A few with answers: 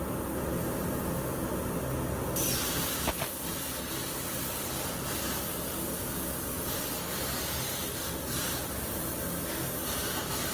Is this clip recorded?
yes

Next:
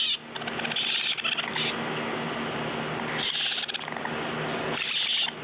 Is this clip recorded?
yes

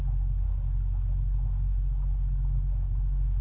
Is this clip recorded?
yes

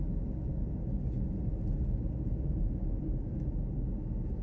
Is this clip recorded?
yes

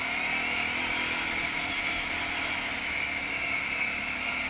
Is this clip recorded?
yes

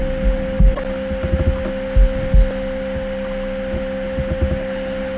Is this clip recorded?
yes